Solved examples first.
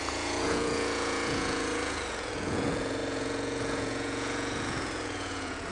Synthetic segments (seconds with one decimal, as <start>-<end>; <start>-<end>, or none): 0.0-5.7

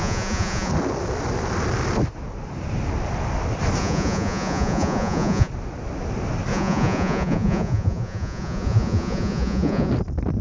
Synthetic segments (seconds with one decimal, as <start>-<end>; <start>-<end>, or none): 0.0-0.7; 3.8-5.5; 6.5-9.9

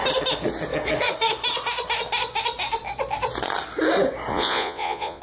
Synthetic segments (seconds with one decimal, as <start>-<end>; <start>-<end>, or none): 4.3-5.2

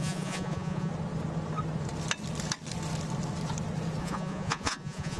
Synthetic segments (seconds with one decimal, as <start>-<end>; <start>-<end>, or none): 0.0-0.9; 4.0-5.2

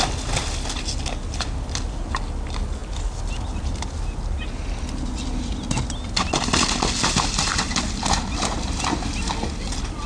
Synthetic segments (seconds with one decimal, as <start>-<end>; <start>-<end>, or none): none